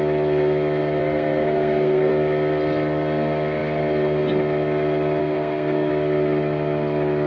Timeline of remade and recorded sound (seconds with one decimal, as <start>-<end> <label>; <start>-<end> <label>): 0.0-1.0 recorded; 1.0-2.1 remade; 2.1-5.2 recorded; 5.2-5.9 remade; 5.9-7.3 recorded

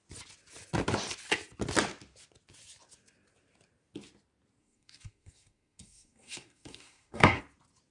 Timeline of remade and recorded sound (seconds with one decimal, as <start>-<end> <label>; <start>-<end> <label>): 0.0-4.6 recorded; 4.6-7.4 remade; 7.4-7.9 recorded